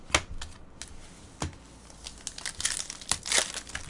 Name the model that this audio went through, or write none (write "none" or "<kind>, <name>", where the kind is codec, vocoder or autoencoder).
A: none